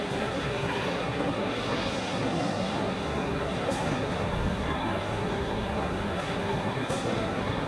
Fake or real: fake